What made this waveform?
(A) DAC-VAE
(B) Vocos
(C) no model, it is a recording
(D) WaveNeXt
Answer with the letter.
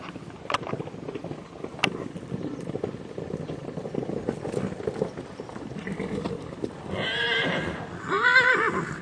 C